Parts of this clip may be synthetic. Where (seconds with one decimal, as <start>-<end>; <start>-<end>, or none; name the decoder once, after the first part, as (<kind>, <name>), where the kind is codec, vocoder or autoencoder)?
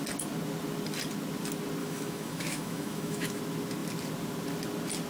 1.8-3.4 (autoencoder, DAC-VAE)